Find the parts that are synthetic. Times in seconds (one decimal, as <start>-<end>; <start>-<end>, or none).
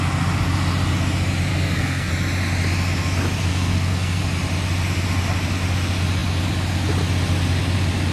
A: 1.5-2.1; 3.5-4.2